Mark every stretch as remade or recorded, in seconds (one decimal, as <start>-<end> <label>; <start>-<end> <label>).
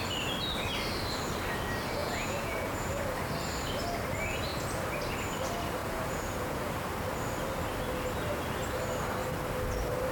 0.0-2.0 recorded; 2.0-3.0 remade; 3.0-5.8 recorded; 5.8-6.7 remade; 6.7-10.1 recorded